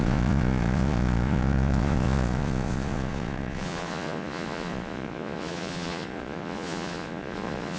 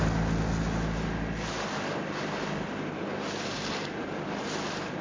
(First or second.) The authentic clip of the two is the second